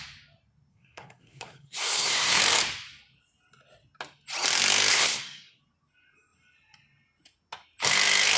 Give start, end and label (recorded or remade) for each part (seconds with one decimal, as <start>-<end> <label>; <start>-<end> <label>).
0.0-0.7 recorded; 0.7-2.4 remade; 2.4-4.9 recorded; 4.9-5.6 remade; 5.6-8.4 recorded